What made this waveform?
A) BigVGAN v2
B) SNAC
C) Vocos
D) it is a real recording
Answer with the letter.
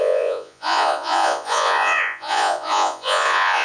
C